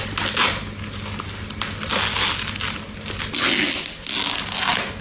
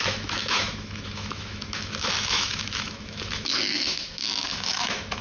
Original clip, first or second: first